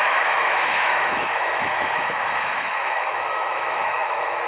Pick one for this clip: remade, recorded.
remade